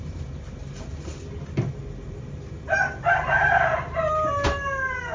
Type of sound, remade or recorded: recorded